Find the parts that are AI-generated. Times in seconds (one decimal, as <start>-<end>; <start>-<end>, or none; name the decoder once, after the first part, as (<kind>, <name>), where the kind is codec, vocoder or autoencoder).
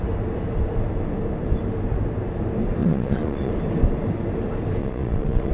2.8-3.5 (vocoder, Vocos); 4.8-5.5